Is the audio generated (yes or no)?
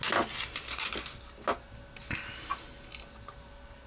no